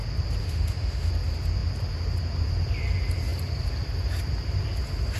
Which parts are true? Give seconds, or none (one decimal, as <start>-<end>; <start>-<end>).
0.0-0.4; 1.1-5.2